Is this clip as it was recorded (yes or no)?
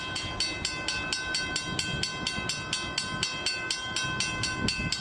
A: yes